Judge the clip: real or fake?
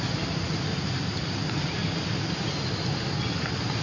real